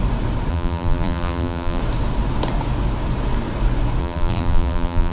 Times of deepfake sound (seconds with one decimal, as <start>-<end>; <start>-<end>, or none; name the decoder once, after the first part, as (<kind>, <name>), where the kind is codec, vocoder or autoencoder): 0.5-1.8 (vocoder, BigVGAN v2); 4.0-5.1